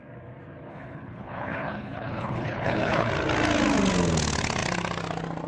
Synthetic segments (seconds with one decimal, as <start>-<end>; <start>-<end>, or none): 0.7-3.1